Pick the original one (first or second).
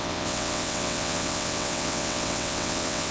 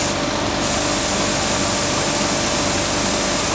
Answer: second